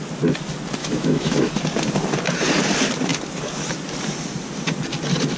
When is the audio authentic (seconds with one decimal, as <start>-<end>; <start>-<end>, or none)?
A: 0.0-0.8; 1.5-5.4